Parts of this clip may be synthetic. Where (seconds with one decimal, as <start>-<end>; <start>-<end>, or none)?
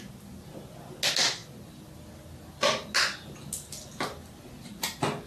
none